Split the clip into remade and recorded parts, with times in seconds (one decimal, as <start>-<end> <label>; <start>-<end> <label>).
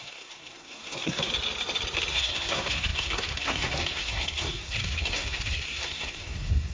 0.0-1.3 remade; 1.3-2.1 recorded; 2.1-6.7 remade